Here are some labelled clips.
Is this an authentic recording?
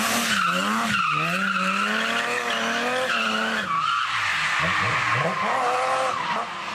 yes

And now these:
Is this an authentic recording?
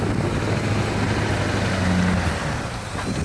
yes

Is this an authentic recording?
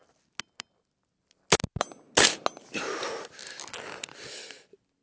yes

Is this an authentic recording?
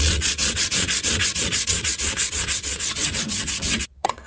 no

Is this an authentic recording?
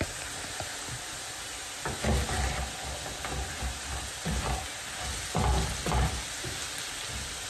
yes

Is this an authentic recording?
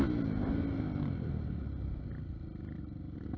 yes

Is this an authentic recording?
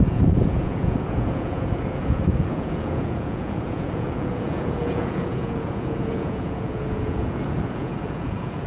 no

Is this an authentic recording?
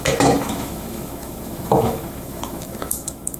no